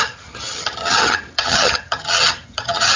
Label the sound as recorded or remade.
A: remade